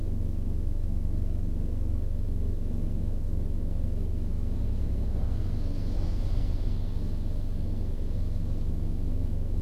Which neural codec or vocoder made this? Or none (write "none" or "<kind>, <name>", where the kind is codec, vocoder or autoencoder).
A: codec, SNAC